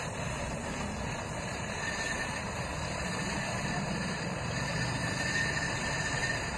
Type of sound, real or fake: fake